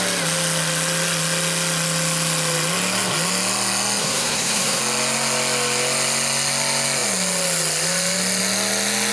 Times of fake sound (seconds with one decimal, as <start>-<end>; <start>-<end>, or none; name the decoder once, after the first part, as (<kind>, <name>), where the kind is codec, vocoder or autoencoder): 4.0-4.8 (codec, SNAC)